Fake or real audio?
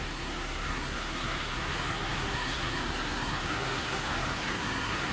fake